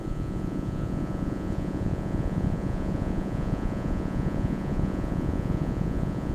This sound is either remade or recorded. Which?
remade